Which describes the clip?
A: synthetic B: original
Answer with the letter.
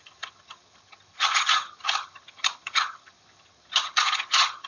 A